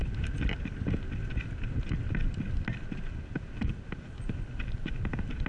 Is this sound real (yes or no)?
yes